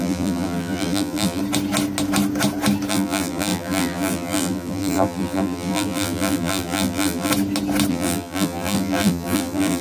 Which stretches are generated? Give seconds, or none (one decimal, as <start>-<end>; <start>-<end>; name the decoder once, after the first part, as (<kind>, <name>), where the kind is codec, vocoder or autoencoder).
0.0-1.4 (vocoder, BigVGAN v2); 2.9-7.3; 7.9-9.8